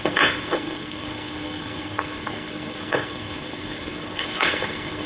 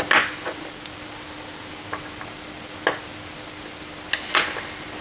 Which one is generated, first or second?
first